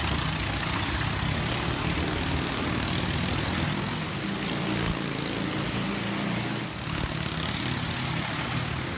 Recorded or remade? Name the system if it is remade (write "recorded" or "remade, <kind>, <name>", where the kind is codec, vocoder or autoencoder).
recorded